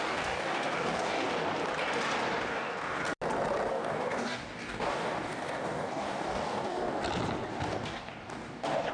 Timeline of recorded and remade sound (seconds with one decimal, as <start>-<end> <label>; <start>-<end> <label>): 0.0-1.6 remade; 1.6-2.4 recorded; 2.4-3.0 remade; 3.0-3.7 recorded; 3.7-7.0 remade; 7.0-7.5 recorded; 7.5-8.9 remade

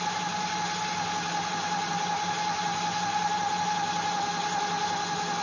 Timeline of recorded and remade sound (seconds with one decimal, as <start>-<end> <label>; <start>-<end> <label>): 0.0-5.4 recorded

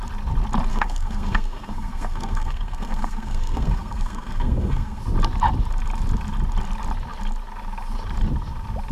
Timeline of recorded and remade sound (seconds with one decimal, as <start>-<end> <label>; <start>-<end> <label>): 0.0-0.7 recorded; 0.7-5.0 remade; 5.0-8.9 recorded

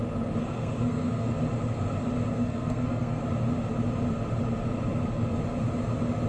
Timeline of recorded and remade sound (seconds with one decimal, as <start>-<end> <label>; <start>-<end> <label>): 0.0-0.4 recorded; 0.4-1.4 remade; 1.4-2.3 recorded; 2.3-3.2 remade; 3.2-6.3 recorded

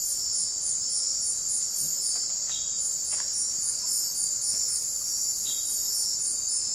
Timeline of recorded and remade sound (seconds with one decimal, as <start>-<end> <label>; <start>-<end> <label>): 0.0-6.7 recorded

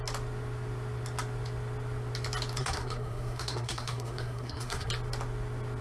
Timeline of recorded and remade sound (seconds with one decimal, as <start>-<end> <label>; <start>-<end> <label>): 0.0-2.6 recorded; 2.6-4.9 remade; 4.9-5.8 recorded

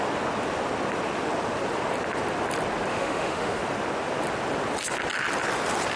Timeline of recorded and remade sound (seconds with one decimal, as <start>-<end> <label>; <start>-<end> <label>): 0.0-2.9 recorded; 2.9-3.6 remade; 3.6-6.0 recorded

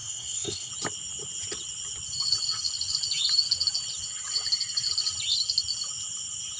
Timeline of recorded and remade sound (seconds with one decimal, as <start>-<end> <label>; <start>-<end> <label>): 0.0-0.7 remade; 0.7-6.6 recorded